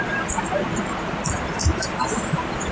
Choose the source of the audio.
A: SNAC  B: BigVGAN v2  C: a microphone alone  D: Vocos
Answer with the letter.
C